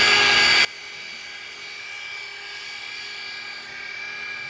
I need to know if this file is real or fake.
real